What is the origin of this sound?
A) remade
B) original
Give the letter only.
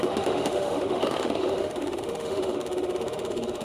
A